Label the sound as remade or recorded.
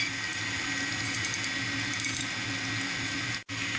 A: recorded